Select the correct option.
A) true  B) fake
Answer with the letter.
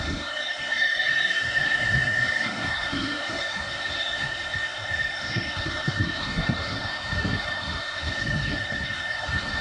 B